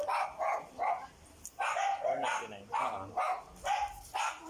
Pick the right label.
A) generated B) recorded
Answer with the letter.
B